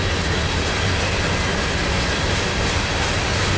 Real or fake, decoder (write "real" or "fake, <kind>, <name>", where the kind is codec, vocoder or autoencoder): real